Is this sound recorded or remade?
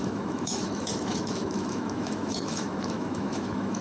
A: remade